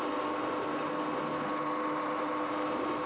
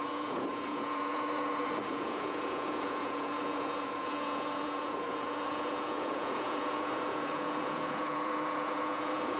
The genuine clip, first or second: first